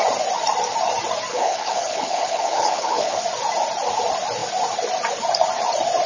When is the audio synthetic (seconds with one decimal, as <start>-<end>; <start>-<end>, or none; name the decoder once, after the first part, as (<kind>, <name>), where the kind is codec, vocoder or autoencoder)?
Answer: 1.3-3.2 (codec, HILCodec)